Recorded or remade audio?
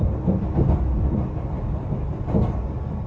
recorded